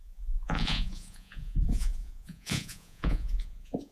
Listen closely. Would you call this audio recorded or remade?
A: remade